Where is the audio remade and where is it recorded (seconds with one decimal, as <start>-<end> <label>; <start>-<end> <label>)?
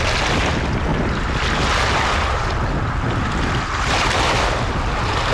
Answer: 0.0-5.3 recorded